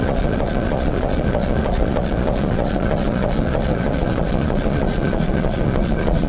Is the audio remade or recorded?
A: remade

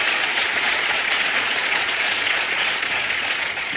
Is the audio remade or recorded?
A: remade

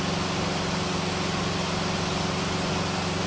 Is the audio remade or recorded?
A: recorded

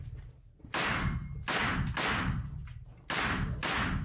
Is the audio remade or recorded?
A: recorded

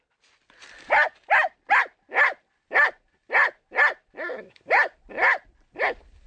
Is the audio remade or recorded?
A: recorded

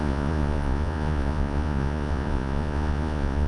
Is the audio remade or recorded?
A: remade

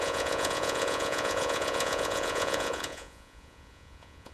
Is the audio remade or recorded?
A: remade